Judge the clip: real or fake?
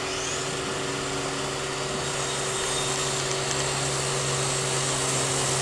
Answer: real